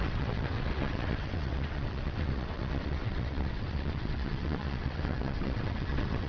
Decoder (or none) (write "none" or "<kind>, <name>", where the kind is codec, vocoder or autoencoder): vocoder, WaveNeXt